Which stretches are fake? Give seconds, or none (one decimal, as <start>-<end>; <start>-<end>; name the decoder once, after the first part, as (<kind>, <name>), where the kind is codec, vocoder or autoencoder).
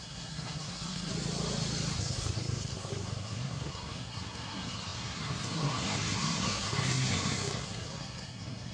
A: 0.0-1.1 (codec, SNAC); 2.0-8.7